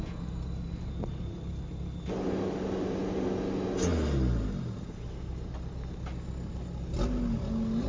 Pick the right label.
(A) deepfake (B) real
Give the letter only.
B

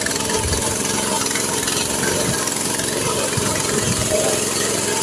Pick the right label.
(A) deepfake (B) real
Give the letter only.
B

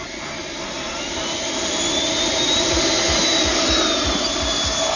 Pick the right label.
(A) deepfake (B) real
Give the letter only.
B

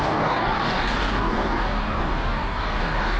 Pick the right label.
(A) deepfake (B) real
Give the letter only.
A